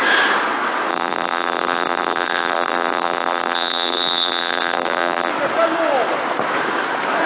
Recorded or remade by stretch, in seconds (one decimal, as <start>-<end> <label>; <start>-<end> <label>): 0.0-0.9 recorded; 0.9-5.3 remade; 5.3-7.3 recorded